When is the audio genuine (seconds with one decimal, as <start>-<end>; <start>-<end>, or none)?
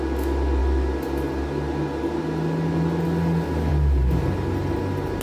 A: 0.0-5.2